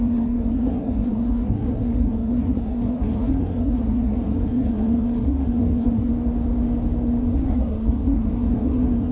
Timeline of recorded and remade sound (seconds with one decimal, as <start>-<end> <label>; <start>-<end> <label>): 0.0-6.1 remade; 6.1-7.2 recorded; 7.2-9.1 remade